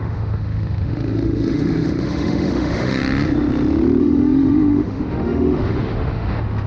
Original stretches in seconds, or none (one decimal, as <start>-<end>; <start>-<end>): 3.0-4.0